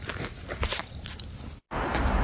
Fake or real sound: real